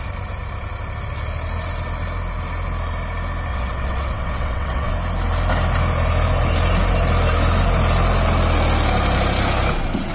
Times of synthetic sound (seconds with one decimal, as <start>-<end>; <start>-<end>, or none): 3.5-4.9